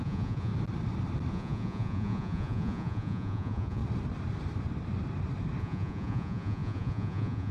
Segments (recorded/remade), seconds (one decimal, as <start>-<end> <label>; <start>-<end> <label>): 0.0-0.5 remade; 0.5-1.3 recorded; 1.3-3.8 remade; 3.8-5.6 recorded; 5.6-7.5 remade

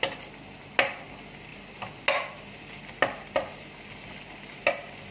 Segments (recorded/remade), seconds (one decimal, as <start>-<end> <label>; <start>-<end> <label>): 0.0-5.1 recorded

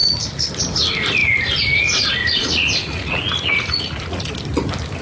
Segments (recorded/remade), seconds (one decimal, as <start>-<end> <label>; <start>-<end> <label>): 0.0-2.2 recorded; 2.2-4.3 remade; 4.3-5.0 recorded

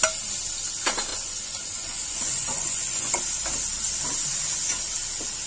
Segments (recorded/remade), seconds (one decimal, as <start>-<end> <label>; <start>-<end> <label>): 0.0-1.1 recorded; 1.1-3.1 remade; 3.1-5.5 recorded

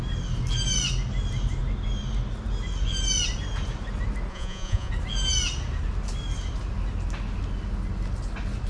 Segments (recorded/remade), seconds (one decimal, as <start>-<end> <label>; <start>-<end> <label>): 0.0-4.3 recorded; 4.3-4.9 remade; 4.9-8.7 recorded

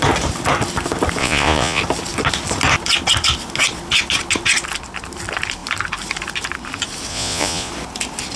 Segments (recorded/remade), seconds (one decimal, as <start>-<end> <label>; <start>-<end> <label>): 0.0-1.2 recorded; 1.2-1.8 remade; 1.8-7.1 recorded; 7.1-7.7 remade; 7.7-8.4 recorded

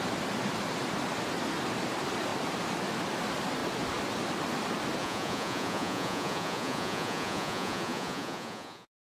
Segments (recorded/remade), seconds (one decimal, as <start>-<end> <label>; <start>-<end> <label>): 0.0-5.0 recorded; 5.0-9.0 remade

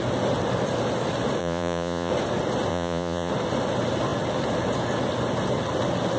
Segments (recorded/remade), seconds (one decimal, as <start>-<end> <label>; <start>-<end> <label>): 0.0-1.4 recorded; 1.4-2.1 remade; 2.1-2.7 recorded; 2.7-3.3 remade; 3.3-6.2 recorded